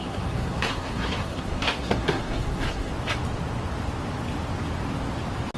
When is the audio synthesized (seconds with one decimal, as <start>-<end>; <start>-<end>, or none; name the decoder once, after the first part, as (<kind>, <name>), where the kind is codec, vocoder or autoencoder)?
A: 0.0-2.9 (codec, SNAC)